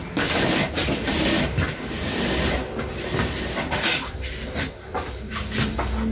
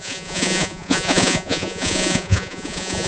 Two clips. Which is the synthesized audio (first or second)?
second